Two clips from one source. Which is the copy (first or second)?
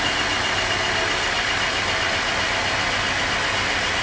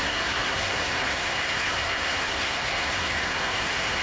second